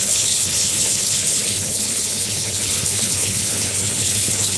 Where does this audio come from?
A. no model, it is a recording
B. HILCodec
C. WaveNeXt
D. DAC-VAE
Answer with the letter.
B